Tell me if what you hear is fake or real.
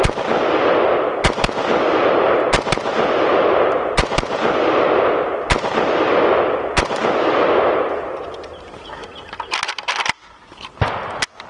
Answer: real